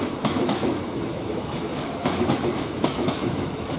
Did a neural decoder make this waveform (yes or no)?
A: yes